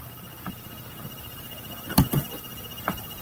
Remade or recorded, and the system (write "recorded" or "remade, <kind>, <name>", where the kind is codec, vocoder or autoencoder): remade, vocoder, BigVGAN v2